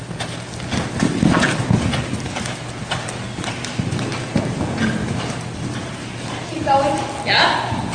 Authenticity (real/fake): real